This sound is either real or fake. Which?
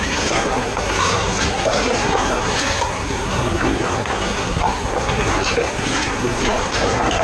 fake